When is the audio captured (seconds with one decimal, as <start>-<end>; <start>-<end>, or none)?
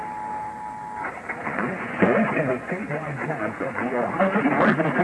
0.0-1.4; 4.4-5.0